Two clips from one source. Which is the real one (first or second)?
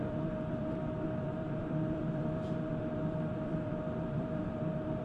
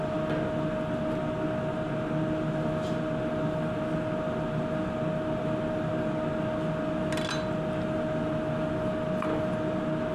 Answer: second